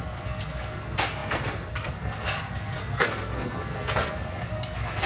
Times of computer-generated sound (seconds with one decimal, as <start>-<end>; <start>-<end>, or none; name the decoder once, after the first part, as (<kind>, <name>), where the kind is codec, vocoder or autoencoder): 0.0-5.1 (codec, SNAC)